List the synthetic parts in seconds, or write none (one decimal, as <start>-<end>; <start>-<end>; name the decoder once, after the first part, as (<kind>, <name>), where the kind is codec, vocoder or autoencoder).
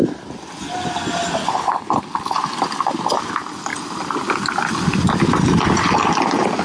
1.4-2.0 (codec, HILCodec)